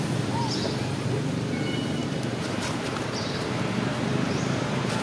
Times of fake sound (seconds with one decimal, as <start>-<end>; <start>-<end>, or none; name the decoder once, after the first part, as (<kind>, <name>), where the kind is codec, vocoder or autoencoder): 2.0-3.3 (vocoder, BigVGAN v2); 4.0-5.0